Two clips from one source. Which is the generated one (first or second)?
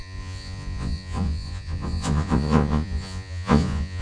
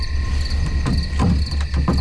first